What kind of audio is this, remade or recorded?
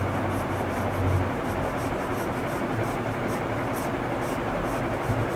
recorded